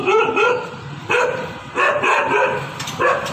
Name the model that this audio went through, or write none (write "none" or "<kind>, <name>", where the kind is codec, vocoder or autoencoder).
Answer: none